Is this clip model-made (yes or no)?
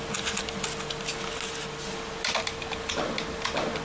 no